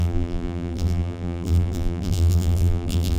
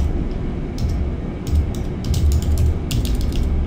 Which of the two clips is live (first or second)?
second